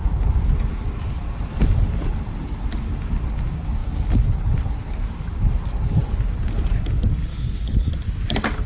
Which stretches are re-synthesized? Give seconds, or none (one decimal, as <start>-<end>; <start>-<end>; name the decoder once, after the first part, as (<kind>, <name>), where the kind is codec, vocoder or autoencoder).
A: 7.3-7.9 (codec, HILCodec)